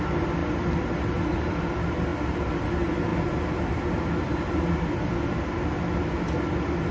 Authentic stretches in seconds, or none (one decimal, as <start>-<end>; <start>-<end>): 0.0-6.9